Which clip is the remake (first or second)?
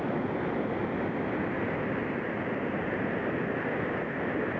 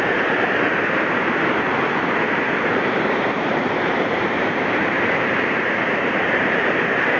second